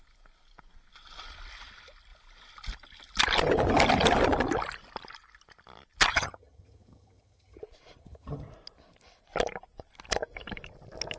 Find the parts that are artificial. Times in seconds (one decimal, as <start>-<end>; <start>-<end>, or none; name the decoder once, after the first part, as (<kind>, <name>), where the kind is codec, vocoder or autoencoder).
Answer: 6.1-7.6 (vocoder, HiFi-GAN); 8.0-8.5